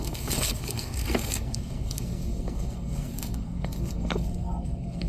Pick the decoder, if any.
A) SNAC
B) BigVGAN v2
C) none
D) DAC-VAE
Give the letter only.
A